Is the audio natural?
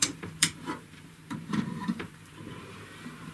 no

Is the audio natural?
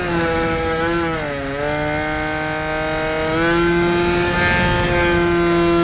yes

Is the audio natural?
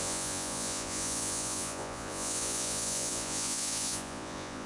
no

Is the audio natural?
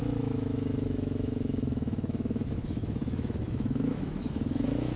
no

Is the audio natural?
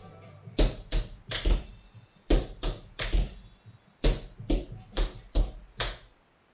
yes